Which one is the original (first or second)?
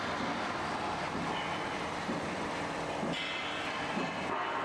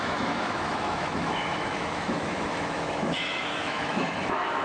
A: first